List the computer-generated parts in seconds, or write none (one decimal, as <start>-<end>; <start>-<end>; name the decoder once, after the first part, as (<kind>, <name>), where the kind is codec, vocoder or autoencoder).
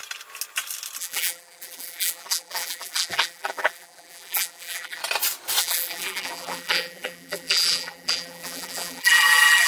1.0-5.0 (vocoder, BigVGAN v2); 5.6-9.7